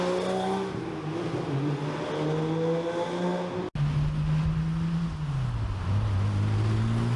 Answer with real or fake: real